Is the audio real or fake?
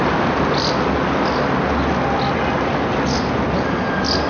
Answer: real